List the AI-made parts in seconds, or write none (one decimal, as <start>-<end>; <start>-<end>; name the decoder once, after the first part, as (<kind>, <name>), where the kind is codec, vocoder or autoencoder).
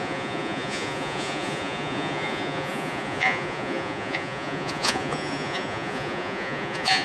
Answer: 0.0-7.0 (vocoder, Vocos)